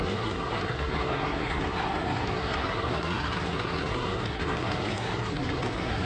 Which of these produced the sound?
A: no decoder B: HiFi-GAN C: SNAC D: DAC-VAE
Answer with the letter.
C